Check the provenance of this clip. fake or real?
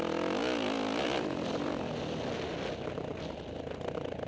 real